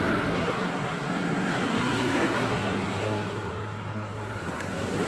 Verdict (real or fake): fake